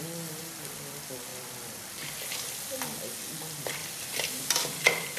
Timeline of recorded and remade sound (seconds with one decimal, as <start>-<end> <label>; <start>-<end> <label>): 0.0-1.3 recorded; 1.3-2.0 remade; 2.0-3.8 recorded; 3.8-4.4 remade; 4.4-5.2 recorded